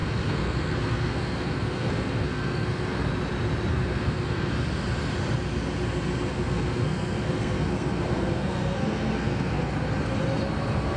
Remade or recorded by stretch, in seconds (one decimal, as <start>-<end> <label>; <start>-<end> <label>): 0.0-3.1 remade; 3.1-3.7 recorded; 3.7-4.5 remade; 4.5-6.3 recorded; 6.3-9.7 remade; 9.7-11.0 recorded